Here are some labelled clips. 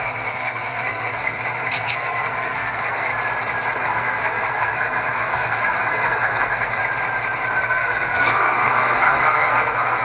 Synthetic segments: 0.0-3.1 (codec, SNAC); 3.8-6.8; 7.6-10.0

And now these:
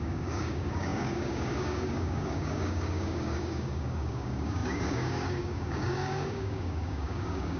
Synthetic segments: 0.0-7.6 (codec, DAC)

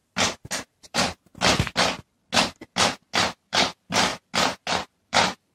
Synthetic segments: 0.6-1.3 (vocoder, BigVGAN v2); 3.5-4.1; 4.9-5.5

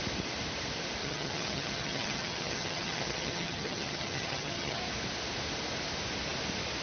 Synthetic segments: 1.0-4.8 (vocoder, HiFi-GAN)

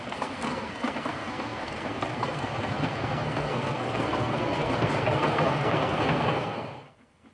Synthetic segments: 0.0-7.3 (codec, SNAC)

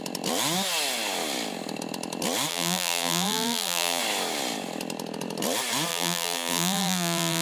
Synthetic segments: 2.5-4.0 (vocoder, BigVGAN v2); 5.9-7.4

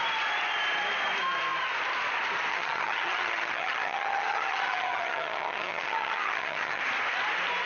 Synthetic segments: 2.5-6.8 (vocoder, HiFi-GAN)

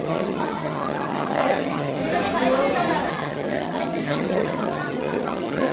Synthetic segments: 0.0-2.0 (vocoder, HiFi-GAN); 3.1-5.7